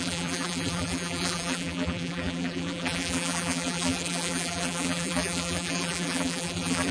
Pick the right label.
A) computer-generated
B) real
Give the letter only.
A